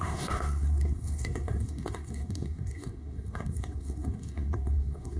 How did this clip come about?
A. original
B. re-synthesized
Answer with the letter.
B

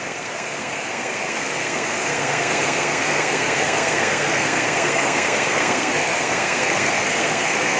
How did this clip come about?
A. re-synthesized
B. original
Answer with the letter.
A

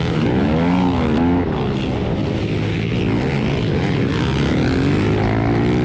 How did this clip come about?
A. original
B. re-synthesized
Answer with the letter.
A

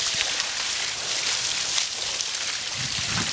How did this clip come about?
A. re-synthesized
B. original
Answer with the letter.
B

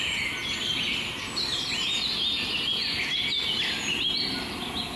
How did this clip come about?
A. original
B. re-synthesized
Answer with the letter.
A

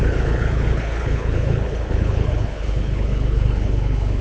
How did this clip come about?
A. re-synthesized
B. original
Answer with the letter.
A